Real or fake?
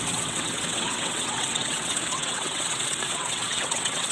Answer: fake